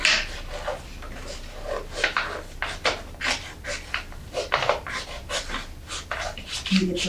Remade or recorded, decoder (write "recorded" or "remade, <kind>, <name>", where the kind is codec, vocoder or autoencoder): recorded